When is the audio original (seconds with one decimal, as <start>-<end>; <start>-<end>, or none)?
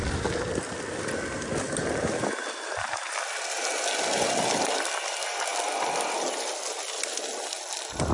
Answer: 0.0-8.1